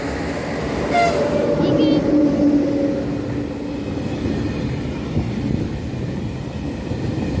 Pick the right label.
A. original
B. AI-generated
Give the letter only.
A